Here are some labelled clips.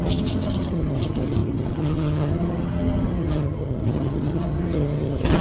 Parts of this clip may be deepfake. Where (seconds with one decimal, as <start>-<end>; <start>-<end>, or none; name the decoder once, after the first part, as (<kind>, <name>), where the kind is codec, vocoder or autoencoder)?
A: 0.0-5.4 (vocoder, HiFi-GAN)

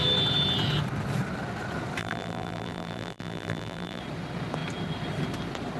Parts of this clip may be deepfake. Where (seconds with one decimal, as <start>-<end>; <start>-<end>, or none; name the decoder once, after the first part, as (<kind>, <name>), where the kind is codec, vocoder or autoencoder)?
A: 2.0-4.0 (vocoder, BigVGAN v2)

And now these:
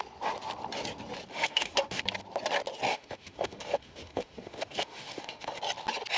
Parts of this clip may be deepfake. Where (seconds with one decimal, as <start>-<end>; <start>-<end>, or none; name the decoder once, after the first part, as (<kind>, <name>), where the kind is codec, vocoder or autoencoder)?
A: 1.3-2.0 (autoencoder, DAC-VAE); 2.9-5.6